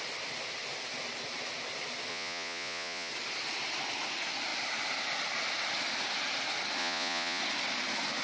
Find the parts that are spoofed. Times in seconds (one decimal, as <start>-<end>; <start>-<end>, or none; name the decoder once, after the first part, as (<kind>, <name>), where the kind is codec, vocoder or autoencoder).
2.1-3.1 (vocoder, Vocos); 6.8-7.4